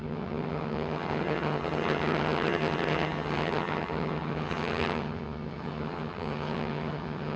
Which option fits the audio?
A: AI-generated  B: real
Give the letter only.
A